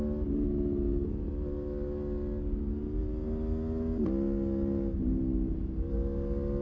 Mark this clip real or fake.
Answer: real